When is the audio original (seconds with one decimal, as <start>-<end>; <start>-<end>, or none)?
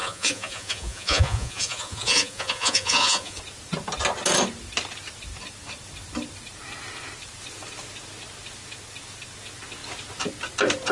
3.4-10.9